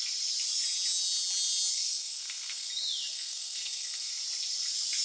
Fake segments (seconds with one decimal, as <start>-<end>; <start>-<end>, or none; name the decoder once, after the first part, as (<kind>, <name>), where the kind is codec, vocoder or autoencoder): 1.7-2.7 (codec, SNAC); 3.1-4.1